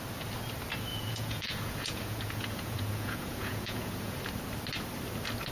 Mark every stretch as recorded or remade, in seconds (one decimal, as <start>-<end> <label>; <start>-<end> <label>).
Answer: 0.0-0.9 recorded; 0.9-4.2 remade; 4.2-5.5 recorded